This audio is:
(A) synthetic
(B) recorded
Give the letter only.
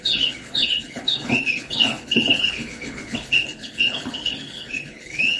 A